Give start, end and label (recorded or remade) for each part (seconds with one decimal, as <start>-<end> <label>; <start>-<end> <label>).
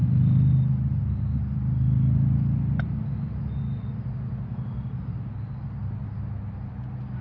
0.0-7.2 recorded